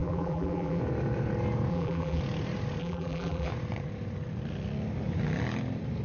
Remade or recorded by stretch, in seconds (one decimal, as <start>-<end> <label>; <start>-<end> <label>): 0.0-0.8 remade; 0.8-1.7 recorded; 1.7-2.2 remade; 2.2-2.8 recorded; 2.8-3.5 remade; 3.5-6.0 recorded

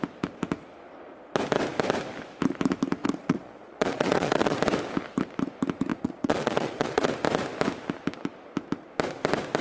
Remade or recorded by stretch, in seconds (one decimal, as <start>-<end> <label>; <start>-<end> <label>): 0.0-3.0 recorded; 3.0-4.6 remade; 4.6-5.9 recorded; 5.9-7.1 remade; 7.1-9.6 recorded

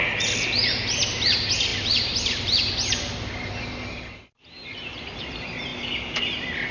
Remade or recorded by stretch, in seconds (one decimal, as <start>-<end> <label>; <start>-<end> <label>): 0.0-1.7 recorded; 1.7-5.2 remade; 5.2-5.7 recorded; 5.7-6.7 remade

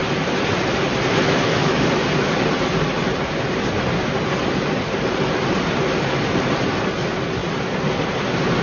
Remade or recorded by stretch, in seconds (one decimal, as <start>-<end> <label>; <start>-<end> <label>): 0.0-1.5 recorded; 1.5-2.5 remade; 2.5-8.6 recorded